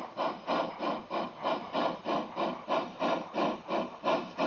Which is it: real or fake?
real